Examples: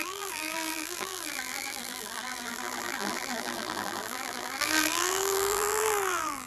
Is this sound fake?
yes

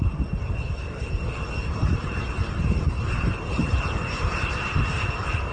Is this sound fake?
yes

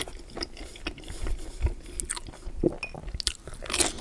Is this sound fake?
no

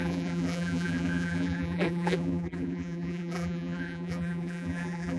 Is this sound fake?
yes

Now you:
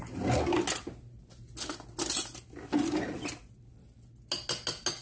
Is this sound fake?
no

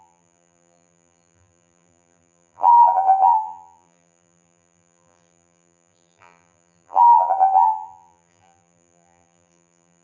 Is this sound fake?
yes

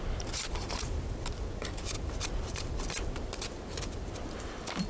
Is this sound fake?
yes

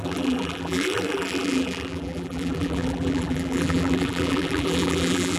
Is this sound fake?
yes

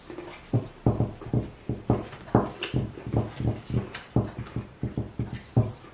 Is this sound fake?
yes